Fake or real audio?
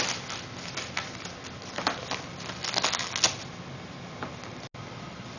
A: real